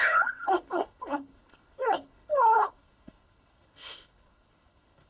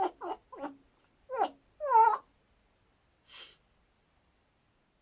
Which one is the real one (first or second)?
second